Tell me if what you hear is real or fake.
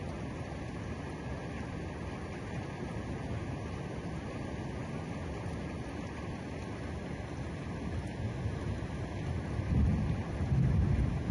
real